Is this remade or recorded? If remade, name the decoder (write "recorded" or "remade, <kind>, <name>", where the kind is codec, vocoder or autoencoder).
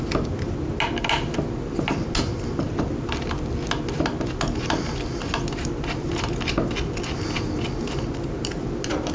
recorded